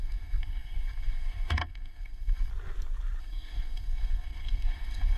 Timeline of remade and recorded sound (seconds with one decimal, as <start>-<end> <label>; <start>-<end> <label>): 0.0-2.5 remade; 2.5-3.2 recorded; 3.2-5.2 remade